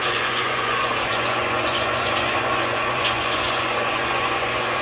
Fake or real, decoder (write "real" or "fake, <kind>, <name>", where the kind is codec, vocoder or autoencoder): fake, vocoder, Vocos